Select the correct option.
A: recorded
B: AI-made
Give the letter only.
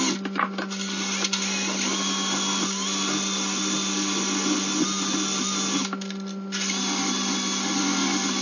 A